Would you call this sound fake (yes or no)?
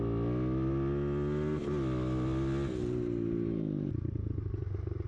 no